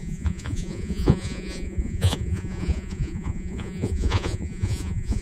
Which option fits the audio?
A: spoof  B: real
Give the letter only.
A